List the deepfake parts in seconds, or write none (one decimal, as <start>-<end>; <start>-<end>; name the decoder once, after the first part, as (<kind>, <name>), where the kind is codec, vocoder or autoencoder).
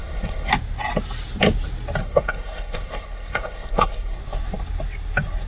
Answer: 0.0-0.5 (codec, SNAC); 2.0-4.2